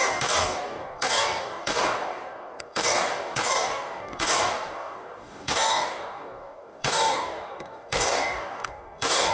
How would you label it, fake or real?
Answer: fake